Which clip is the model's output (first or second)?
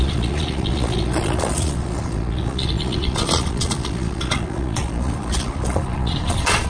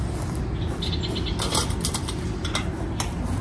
first